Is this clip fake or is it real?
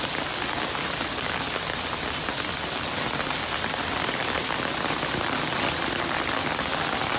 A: real